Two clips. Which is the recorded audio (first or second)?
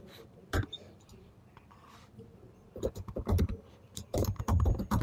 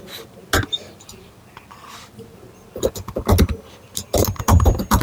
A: second